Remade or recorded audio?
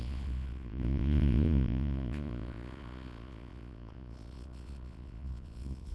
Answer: remade